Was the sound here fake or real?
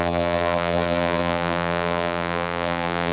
fake